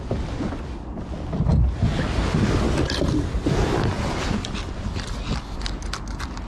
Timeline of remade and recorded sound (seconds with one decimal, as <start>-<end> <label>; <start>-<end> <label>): 0.0-6.5 recorded